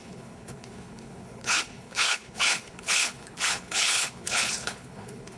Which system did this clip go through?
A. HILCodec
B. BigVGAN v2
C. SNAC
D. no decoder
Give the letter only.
A